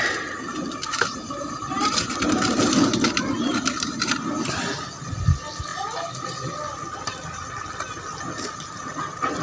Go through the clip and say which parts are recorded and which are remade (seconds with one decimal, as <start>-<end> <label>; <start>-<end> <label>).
0.0-0.5 recorded; 0.5-4.6 remade; 4.6-9.4 recorded